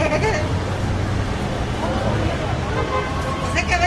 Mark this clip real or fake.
real